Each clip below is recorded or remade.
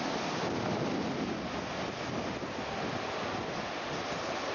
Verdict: recorded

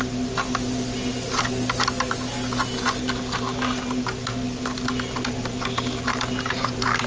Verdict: recorded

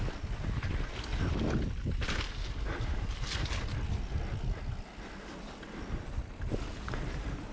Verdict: recorded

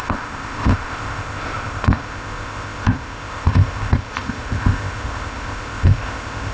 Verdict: remade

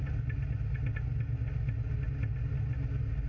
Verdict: recorded